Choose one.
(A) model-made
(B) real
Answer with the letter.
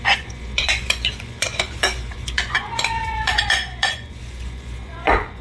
A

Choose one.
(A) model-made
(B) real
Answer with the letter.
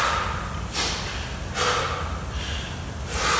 B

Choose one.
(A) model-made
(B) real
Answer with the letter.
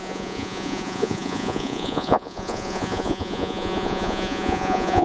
A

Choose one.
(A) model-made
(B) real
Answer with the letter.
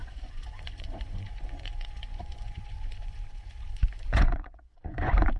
A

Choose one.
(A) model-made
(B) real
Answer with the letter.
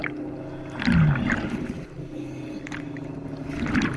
B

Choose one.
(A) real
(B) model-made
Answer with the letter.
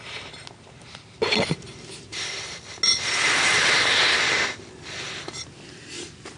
A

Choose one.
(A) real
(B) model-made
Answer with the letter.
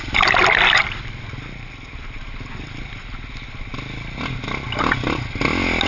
A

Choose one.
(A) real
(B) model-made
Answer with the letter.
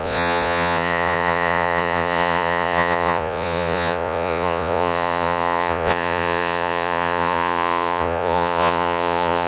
B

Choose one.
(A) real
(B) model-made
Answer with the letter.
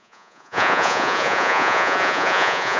B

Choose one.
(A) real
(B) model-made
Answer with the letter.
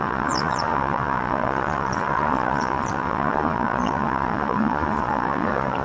B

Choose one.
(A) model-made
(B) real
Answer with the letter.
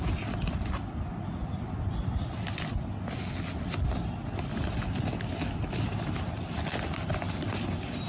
B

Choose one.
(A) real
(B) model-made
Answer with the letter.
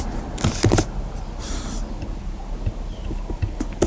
A